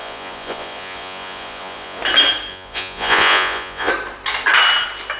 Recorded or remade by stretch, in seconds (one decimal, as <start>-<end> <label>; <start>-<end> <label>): 0.0-2.0 remade; 2.0-2.5 recorded; 2.5-3.9 remade; 3.9-5.2 recorded